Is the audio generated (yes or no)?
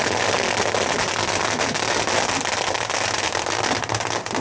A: no